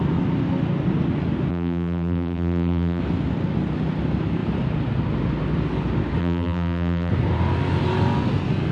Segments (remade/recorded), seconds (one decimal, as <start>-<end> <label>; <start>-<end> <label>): 0.0-1.5 recorded; 1.5-3.0 remade; 3.0-6.2 recorded; 6.2-7.1 remade; 7.1-8.7 recorded